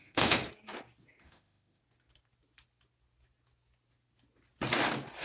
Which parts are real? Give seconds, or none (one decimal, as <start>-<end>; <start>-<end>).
0.4-1.2; 1.8-5.2